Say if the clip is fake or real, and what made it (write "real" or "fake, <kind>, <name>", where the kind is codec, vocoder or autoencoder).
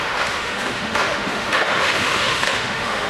fake, autoencoder, DAC-VAE